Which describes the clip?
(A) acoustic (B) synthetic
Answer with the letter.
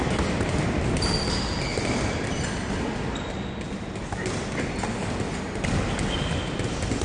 A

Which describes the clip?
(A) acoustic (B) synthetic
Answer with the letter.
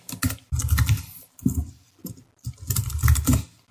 A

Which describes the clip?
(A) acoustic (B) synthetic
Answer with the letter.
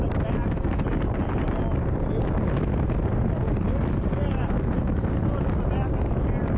A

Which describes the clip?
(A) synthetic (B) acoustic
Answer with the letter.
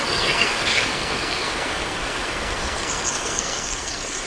A